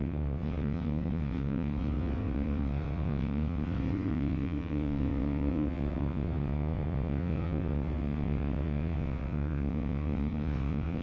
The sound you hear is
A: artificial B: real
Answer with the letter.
A